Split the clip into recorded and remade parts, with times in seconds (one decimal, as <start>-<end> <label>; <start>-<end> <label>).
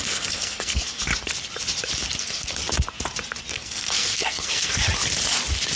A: 0.0-1.1 remade; 1.1-2.2 recorded; 2.2-2.6 remade; 2.6-3.5 recorded; 3.5-4.8 remade; 4.8-5.8 recorded